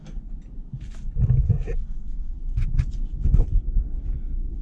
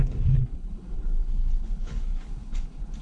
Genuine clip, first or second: first